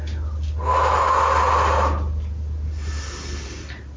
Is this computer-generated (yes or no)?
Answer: no